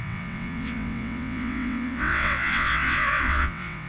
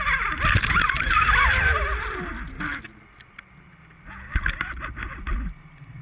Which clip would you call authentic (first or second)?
second